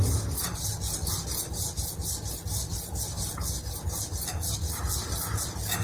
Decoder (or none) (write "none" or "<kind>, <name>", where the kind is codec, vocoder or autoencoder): none